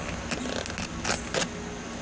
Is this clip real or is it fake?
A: real